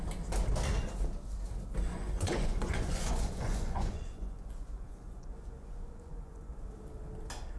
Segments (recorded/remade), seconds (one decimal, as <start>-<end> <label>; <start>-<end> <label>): 0.0-1.9 recorded; 1.9-6.5 remade; 6.5-7.6 recorded